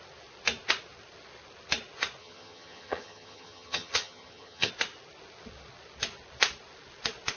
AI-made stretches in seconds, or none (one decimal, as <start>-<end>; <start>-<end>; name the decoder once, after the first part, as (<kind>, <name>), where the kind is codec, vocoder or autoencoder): 2.2-4.7 (vocoder, HiFi-GAN)